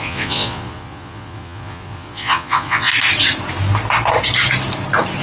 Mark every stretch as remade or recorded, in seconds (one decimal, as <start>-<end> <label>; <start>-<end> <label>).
0.0-2.9 remade; 2.9-5.2 recorded